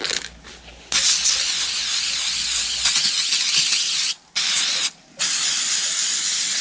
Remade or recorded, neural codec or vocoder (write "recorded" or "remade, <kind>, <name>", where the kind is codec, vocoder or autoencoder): recorded